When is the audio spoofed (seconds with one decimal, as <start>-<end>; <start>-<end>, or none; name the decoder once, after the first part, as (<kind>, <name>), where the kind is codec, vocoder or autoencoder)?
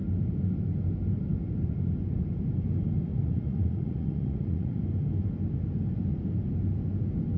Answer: 3.1-4.8 (vocoder, Vocos)